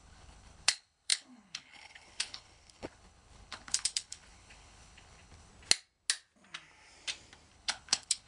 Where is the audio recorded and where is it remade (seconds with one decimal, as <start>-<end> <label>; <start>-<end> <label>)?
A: 0.0-5.5 remade; 5.5-7.5 recorded; 7.5-8.3 remade